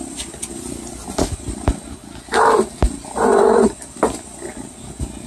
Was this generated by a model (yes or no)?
no